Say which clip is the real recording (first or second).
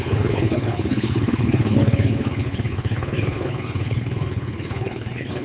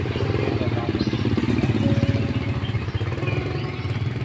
second